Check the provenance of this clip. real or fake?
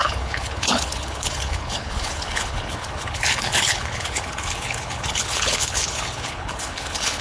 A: fake